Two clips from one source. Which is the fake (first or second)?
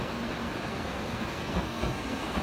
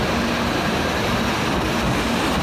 first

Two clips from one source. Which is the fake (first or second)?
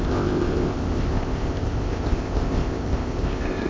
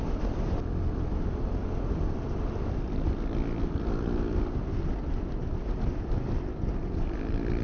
first